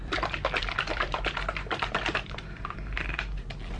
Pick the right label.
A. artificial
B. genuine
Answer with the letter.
A